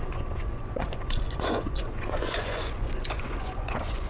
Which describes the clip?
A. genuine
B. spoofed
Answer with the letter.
B